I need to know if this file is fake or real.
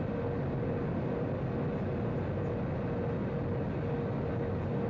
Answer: real